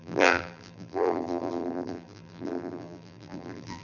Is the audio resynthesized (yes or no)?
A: yes